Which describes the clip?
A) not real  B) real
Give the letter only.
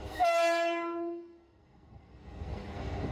A